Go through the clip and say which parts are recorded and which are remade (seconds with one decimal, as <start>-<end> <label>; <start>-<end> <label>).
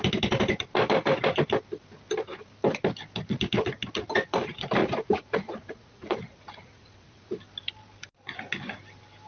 0.0-4.8 recorded; 4.8-7.3 remade; 7.3-9.3 recorded